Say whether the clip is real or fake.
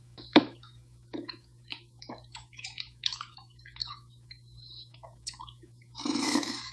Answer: fake